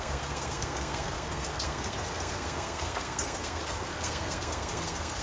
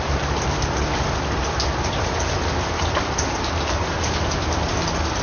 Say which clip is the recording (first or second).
second